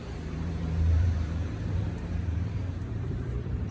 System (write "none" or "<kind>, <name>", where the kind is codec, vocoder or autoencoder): vocoder, BigVGAN v2